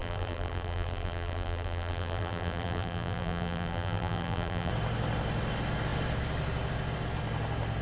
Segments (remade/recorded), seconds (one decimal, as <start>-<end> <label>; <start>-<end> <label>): 0.0-4.7 remade; 4.7-7.8 recorded